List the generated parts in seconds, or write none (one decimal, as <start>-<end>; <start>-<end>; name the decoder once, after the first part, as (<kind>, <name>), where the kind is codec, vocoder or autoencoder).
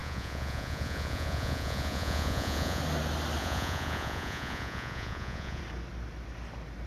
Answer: 0.0-2.8 (vocoder, Vocos); 3.4-5.6